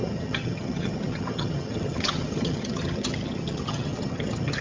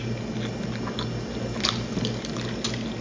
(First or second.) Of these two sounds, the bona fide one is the second